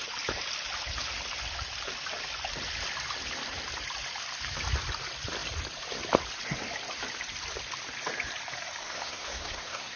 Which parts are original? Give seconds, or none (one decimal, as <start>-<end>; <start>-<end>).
0.0-8.8